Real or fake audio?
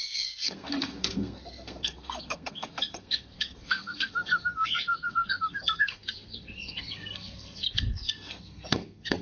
fake